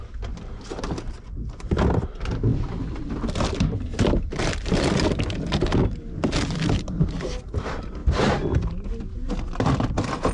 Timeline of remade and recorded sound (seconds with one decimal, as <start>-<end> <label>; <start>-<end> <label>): 0.0-2.5 recorded; 2.5-3.5 remade; 3.5-10.3 recorded